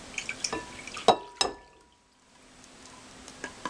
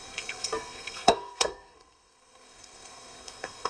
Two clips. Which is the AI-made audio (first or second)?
second